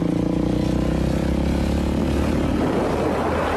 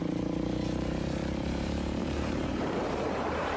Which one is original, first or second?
first